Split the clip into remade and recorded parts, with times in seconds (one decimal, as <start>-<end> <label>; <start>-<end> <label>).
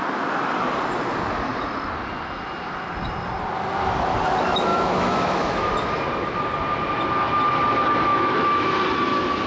0.0-4.7 recorded; 4.7-5.7 remade; 5.7-8.1 recorded; 8.1-8.7 remade; 8.7-9.5 recorded